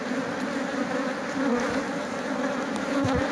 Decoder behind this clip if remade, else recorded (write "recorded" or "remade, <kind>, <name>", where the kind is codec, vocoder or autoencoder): recorded